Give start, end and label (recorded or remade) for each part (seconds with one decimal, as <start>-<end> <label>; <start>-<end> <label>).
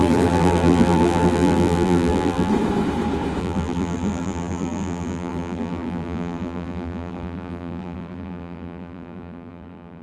0.0-2.5 remade; 2.5-3.4 recorded; 3.4-10.0 remade